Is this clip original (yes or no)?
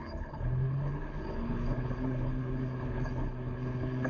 no